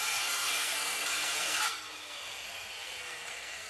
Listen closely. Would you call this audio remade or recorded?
remade